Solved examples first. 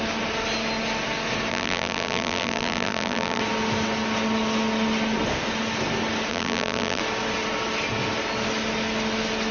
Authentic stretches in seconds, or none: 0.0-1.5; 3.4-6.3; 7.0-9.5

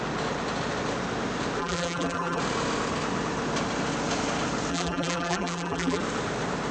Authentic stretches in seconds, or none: 0.0-1.6; 2.4-4.7; 6.0-6.7

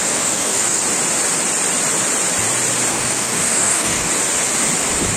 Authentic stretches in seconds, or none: 0.8-2.9; 4.1-5.2